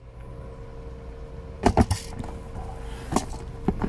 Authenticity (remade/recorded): recorded